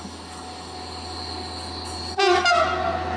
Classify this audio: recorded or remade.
recorded